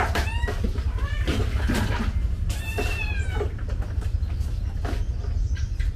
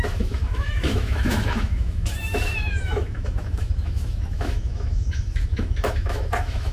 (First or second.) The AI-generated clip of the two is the second